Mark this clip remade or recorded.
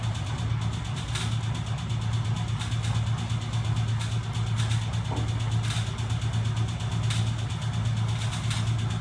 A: recorded